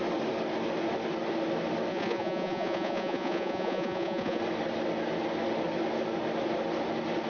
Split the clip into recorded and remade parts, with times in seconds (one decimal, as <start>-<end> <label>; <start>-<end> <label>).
0.0-1.9 recorded; 1.9-4.4 remade; 4.4-7.3 recorded